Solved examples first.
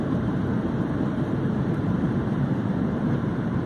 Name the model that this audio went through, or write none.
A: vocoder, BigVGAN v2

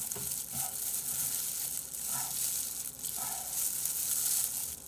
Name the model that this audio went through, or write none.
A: none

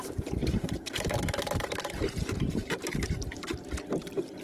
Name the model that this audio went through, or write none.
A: vocoder, BigVGAN v2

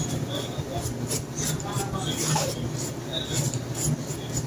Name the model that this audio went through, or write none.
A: none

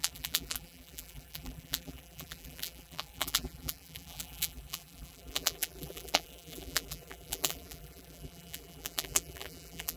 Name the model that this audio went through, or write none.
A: vocoder, BigVGAN v2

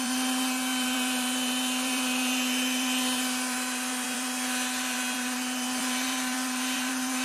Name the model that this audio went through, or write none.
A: vocoder, BigVGAN v2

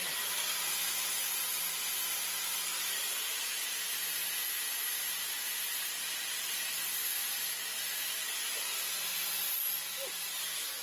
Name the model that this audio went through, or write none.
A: vocoder, BigVGAN v2